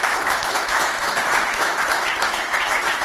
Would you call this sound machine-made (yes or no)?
yes